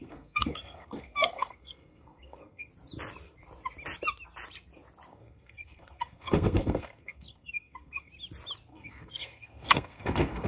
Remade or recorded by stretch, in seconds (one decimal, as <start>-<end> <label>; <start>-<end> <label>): 0.0-2.7 remade; 2.7-5.1 recorded; 5.1-8.1 remade; 8.1-8.7 recorded; 8.7-10.5 remade